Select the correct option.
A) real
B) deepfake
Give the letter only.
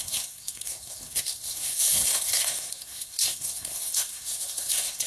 B